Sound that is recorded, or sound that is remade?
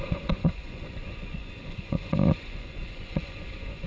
remade